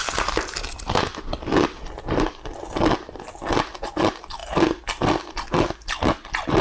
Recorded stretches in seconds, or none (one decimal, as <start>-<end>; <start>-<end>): 0.0-6.6